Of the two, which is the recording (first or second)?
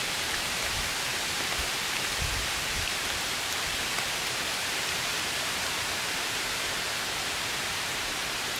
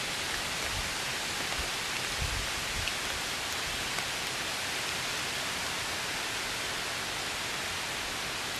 second